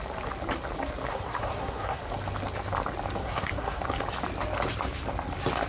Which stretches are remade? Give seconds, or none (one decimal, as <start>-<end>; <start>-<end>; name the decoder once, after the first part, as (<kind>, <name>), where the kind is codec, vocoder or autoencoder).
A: 1.1-2.0 (codec, SNAC); 3.2-3.8